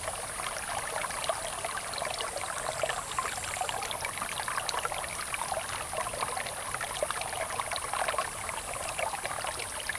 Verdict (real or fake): real